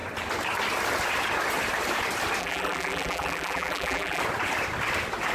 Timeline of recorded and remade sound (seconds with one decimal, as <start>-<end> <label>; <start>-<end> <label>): 0.0-2.4 recorded; 2.4-4.2 remade; 4.2-5.3 recorded